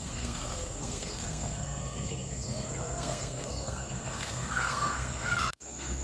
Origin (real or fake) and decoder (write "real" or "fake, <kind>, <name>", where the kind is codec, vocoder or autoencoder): fake, codec, SNAC